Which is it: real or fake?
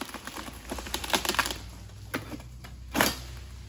real